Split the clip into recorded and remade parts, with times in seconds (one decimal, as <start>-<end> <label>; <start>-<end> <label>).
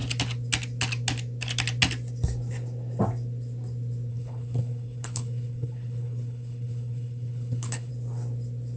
0.0-4.1 recorded; 4.1-7.9 remade; 7.9-8.8 recorded